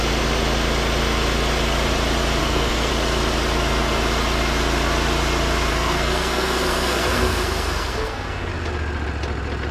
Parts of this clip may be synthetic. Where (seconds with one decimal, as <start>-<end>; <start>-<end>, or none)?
2.4-2.9; 5.7-8.5